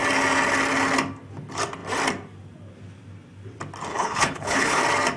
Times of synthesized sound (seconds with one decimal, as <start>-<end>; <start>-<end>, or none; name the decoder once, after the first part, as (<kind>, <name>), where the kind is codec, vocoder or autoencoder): 3.9-4.8 (codec, HILCodec)